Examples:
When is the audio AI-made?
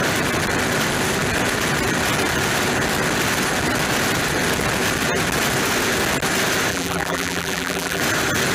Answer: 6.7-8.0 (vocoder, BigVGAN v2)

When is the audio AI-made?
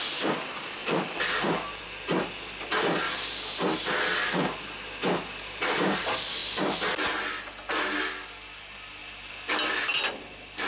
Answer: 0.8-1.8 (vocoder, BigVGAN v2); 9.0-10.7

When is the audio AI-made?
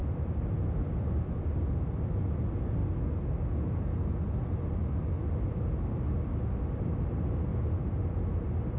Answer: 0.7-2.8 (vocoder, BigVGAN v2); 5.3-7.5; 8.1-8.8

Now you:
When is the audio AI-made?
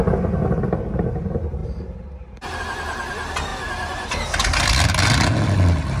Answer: 1.6-2.6 (vocoder, BigVGAN v2); 3.5-4.1